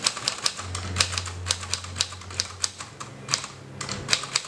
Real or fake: real